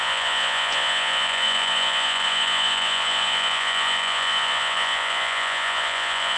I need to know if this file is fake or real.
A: fake